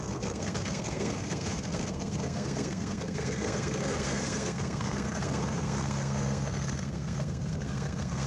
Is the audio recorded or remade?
remade